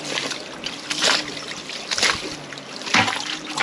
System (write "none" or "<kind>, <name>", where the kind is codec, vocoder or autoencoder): none